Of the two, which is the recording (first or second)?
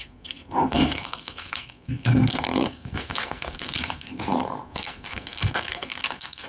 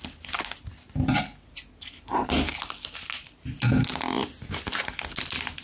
second